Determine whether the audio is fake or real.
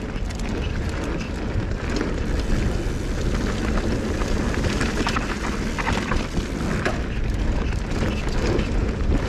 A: real